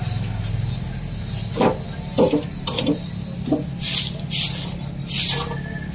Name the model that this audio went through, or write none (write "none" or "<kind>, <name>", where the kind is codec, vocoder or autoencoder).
none